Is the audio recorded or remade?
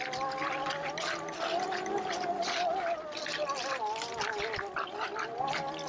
recorded